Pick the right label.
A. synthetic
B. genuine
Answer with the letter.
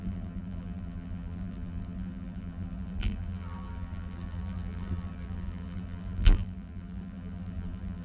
A